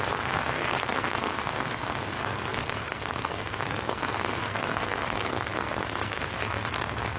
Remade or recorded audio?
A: remade